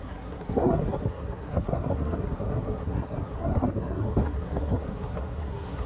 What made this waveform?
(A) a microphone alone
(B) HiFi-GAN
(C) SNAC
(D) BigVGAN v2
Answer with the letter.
C